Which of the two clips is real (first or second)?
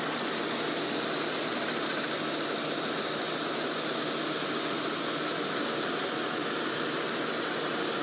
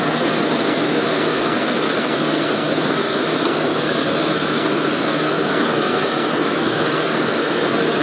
first